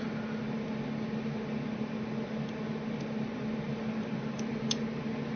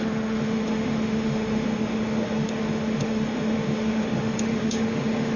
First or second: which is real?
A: first